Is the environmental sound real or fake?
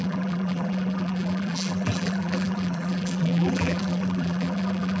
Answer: fake